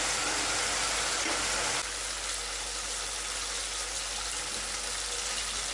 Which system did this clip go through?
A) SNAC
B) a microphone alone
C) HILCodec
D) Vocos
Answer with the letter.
B